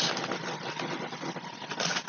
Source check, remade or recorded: recorded